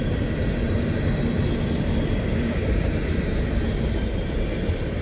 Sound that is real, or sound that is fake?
real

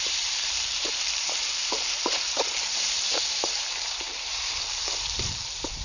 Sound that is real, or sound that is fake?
fake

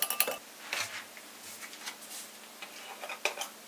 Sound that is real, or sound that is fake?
real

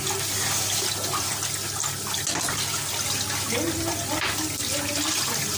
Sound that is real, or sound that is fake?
real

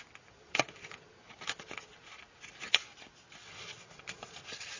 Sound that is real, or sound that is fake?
real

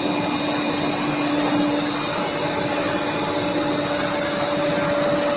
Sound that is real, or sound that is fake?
real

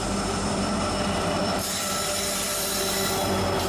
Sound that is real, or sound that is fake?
fake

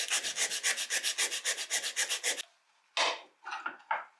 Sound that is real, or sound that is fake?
real